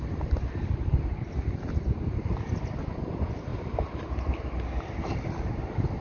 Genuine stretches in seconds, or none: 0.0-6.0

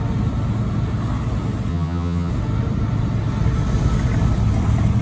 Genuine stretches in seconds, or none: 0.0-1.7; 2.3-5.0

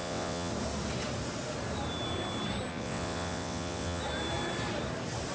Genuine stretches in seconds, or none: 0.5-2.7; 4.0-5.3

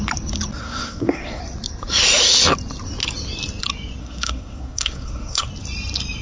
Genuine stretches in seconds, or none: 0.0-0.6; 1.4-4.0; 5.5-6.2

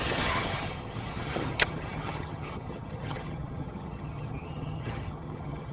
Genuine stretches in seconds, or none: none